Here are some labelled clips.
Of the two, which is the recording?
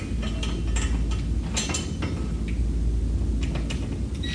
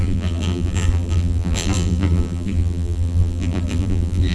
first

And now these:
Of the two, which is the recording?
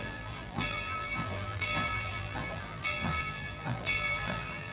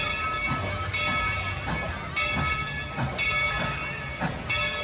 second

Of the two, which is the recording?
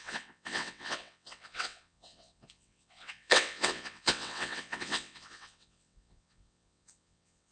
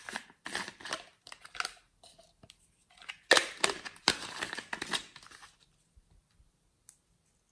second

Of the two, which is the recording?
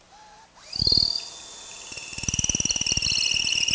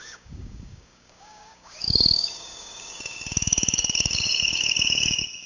first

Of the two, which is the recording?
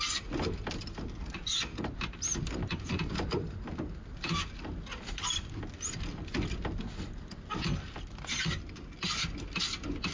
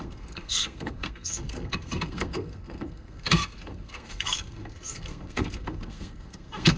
first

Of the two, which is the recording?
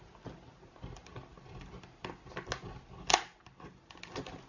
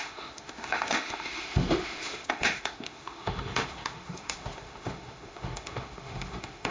first